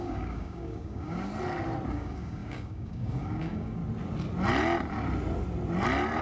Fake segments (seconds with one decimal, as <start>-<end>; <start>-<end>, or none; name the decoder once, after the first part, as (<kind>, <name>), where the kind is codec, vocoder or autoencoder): 0.0-1.3 (codec, DAC); 1.9-3.8